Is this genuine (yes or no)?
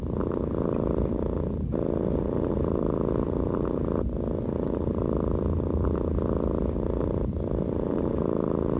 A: yes